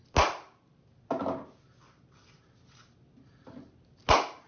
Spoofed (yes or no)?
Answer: no